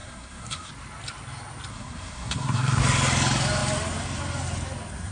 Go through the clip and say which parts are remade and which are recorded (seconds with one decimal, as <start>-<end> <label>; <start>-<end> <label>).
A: 0.0-0.7 remade; 0.7-1.7 recorded; 1.7-2.8 remade; 2.8-5.1 recorded